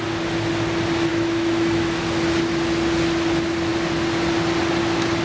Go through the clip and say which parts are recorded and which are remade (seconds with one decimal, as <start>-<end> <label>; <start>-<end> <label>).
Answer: 0.0-1.1 recorded; 1.1-2.0 remade; 2.0-5.2 recorded